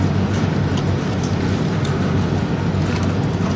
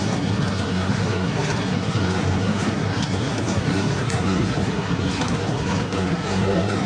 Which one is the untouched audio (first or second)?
first